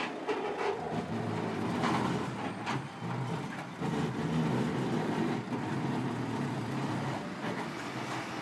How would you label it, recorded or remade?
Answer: recorded